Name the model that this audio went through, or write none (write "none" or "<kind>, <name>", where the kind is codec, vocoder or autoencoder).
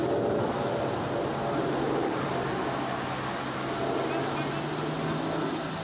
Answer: none